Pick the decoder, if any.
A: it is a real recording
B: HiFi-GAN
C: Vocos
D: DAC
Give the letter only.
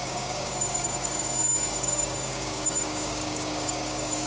D